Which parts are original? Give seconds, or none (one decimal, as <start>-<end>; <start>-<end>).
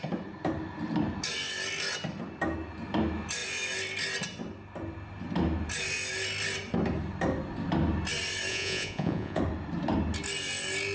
0.0-8.5; 9.4-10.9